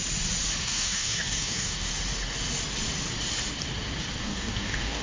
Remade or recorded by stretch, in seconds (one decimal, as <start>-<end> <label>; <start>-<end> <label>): 0.0-0.6 recorded; 0.6-1.9 remade; 1.9-4.2 recorded; 4.2-5.0 remade